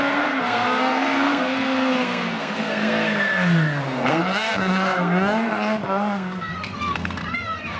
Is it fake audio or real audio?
fake